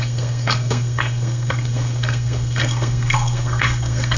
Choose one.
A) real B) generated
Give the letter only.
B